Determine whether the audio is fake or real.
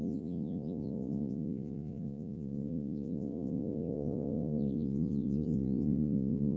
fake